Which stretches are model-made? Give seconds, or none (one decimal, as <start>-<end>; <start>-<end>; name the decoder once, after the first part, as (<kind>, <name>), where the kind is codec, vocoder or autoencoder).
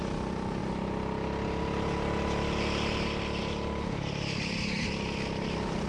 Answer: none